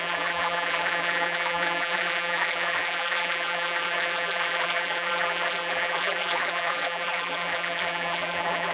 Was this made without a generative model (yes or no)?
no